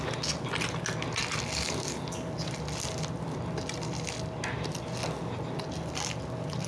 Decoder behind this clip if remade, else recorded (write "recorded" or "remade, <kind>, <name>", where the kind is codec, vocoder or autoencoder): recorded